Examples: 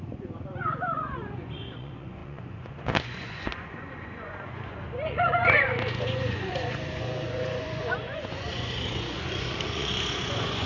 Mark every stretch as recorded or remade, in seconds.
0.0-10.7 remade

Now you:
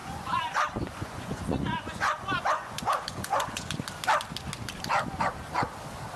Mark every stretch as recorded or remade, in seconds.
0.0-3.7 remade; 3.7-6.2 recorded

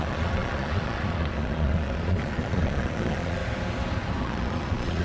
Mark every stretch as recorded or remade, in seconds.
0.0-3.4 remade; 3.4-4.2 recorded; 4.2-5.0 remade